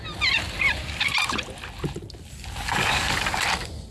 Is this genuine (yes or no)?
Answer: yes